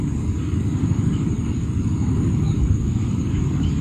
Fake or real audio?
fake